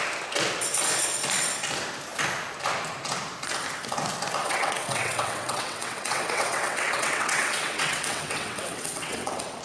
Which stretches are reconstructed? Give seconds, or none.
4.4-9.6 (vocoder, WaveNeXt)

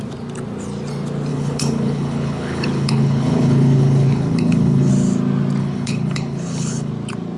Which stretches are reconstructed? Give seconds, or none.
1.3-4.9 (codec, HILCodec); 5.6-6.9

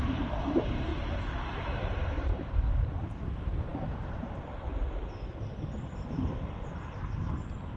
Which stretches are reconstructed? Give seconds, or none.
0.0-0.9 (vocoder, BigVGAN v2); 1.5-7.8